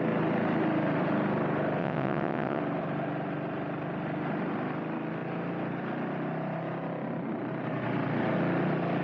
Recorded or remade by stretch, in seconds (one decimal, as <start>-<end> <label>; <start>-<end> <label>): 0.0-1.8 recorded; 1.8-2.6 remade; 2.6-9.0 recorded